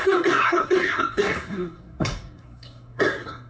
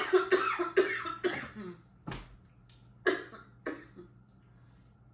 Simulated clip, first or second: first